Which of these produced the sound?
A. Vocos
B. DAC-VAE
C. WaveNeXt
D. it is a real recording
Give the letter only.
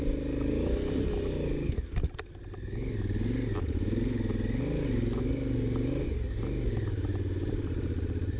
D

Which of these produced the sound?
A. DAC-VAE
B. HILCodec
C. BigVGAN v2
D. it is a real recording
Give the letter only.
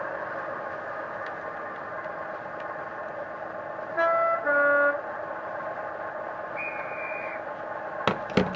D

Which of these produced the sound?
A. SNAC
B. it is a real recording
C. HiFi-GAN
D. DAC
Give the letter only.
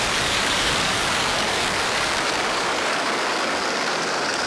D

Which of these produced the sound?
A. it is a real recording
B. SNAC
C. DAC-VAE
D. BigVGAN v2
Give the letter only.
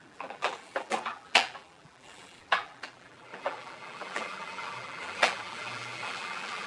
D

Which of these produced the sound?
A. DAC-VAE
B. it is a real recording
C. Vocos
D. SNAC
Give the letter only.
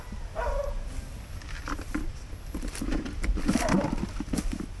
B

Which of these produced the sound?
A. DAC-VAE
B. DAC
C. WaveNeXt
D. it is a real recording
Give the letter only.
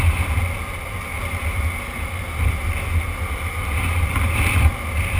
D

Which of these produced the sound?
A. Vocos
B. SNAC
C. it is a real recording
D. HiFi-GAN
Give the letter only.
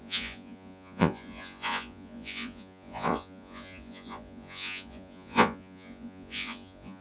A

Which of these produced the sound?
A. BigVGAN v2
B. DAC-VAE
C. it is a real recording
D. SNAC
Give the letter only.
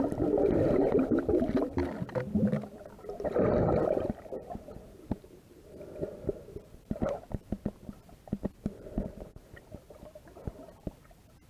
A